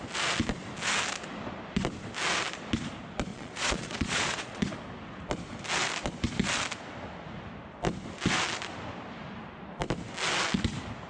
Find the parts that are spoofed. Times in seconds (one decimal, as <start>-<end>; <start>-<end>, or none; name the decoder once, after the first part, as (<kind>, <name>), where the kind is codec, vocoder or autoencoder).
3.3-4.6 (vocoder, Vocos)